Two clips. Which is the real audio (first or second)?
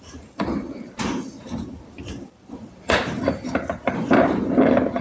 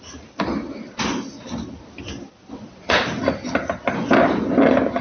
second